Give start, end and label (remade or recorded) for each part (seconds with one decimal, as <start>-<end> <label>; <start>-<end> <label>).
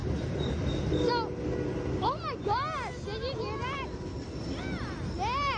0.0-5.6 recorded